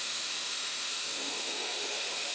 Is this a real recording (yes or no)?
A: no